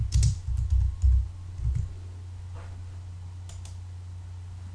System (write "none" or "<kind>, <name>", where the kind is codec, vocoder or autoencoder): none